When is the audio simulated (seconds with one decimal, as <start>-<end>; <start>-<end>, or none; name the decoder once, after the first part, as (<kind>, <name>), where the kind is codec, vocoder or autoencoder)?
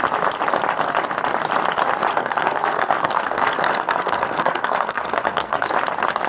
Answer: 2.1-5.7 (codec, SNAC)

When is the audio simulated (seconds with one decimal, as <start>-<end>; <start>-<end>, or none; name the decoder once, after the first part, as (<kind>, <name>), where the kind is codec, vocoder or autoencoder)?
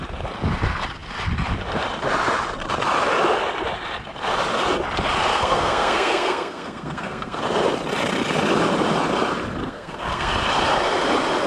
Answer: 5.3-7.4 (codec, SNAC); 9.6-10.3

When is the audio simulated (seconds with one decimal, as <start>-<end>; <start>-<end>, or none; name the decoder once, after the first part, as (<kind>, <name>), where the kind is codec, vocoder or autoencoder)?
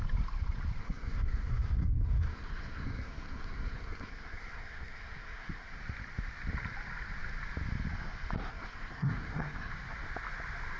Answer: 0.8-5.7 (codec, SNAC); 8.5-9.7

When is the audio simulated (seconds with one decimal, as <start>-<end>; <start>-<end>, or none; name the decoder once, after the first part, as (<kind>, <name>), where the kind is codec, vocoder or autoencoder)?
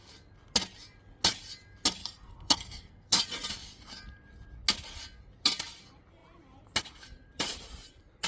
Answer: 2.0-3.2 (codec, SNAC)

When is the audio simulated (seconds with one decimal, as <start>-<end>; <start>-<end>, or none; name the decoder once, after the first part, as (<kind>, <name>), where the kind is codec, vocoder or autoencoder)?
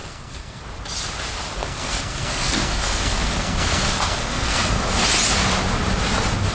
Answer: 0.0-0.6 (codec, SNAC); 1.6-4.8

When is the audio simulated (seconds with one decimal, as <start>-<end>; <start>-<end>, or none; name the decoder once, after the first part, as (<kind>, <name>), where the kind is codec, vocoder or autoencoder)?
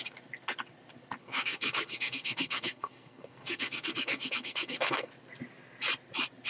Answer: 1.2-5.1 (codec, SNAC)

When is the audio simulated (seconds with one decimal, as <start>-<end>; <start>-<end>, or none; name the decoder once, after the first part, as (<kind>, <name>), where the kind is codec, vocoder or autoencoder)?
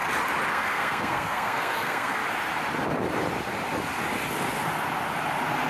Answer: 0.5-2.2 (codec, SNAC)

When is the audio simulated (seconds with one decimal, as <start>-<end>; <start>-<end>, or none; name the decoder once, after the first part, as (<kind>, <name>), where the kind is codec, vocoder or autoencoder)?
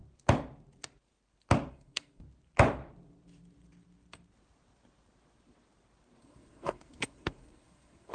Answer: 1.7-2.2 (codec, SNAC); 6.2-8.1